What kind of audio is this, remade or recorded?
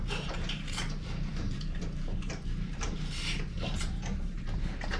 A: remade